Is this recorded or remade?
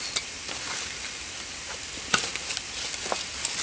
recorded